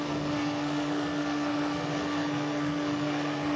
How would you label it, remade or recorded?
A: remade